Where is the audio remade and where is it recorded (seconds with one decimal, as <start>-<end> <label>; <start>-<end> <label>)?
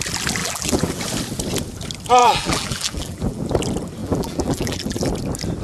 0.0-0.4 recorded; 0.4-1.0 remade; 1.0-2.2 recorded; 2.2-3.4 remade; 3.4-4.0 recorded; 4.0-5.1 remade; 5.1-5.6 recorded